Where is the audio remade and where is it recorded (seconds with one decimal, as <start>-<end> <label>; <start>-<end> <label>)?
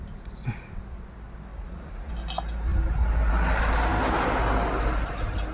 0.0-1.5 recorded; 1.5-2.1 remade; 2.1-5.5 recorded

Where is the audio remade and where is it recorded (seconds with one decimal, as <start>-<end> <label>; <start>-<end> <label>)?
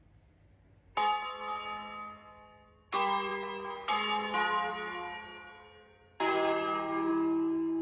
0.0-7.8 recorded